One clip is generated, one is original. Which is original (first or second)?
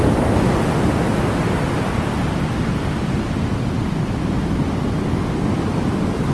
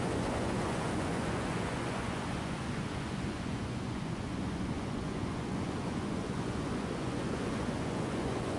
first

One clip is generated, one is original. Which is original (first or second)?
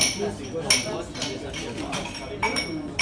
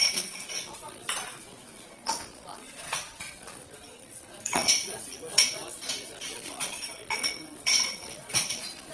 first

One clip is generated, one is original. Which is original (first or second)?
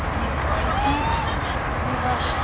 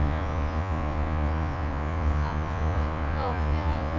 first